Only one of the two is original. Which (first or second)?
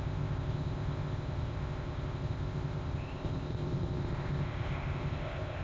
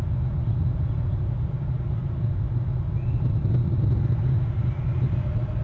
second